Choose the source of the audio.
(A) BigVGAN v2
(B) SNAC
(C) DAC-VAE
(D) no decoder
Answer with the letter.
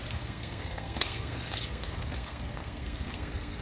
B